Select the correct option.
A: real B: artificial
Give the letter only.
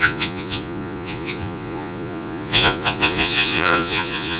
B